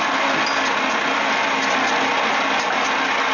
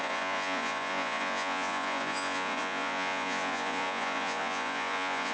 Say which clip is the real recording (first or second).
first